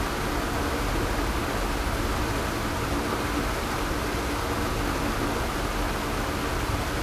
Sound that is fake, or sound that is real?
real